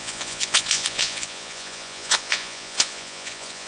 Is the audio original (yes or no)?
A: no